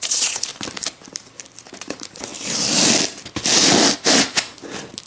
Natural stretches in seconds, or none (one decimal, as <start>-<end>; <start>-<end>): 0.5-1.7; 2.3-5.1